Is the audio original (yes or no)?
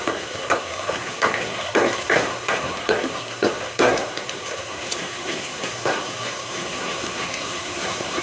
no